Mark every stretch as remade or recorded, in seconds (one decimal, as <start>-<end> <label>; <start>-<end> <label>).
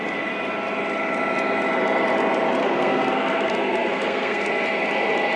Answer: 0.0-2.6 recorded; 2.6-4.5 remade; 4.5-5.4 recorded